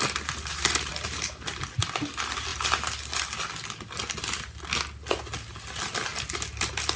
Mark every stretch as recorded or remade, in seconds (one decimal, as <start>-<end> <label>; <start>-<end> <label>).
0.0-7.0 recorded